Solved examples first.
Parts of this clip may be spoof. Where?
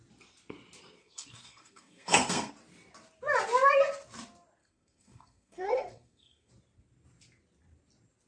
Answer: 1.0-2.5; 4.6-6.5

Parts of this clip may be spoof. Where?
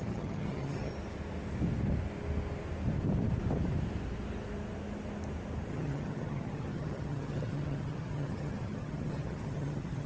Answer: 0.0-0.9; 5.7-10.1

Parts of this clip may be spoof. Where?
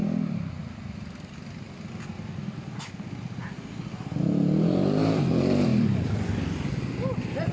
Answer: 5.7-6.7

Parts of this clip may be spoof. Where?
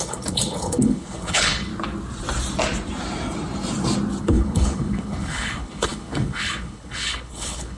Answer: 0.0-1.7; 4.2-7.8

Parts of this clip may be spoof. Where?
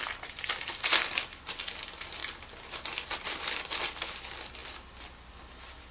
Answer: none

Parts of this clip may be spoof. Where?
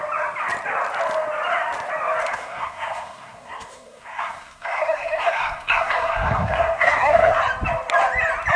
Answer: 2.2-7.4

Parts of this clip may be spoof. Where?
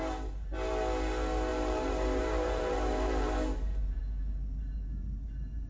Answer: 1.5-4.0